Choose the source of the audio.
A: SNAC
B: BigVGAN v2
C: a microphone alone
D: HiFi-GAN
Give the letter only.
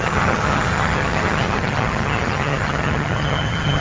D